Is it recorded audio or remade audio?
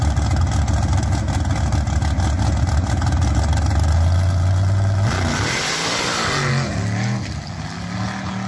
recorded